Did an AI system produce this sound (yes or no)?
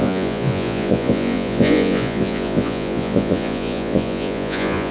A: yes